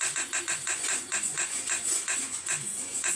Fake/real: fake